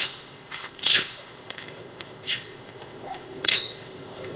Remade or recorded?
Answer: remade